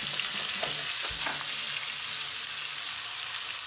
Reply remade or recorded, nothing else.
recorded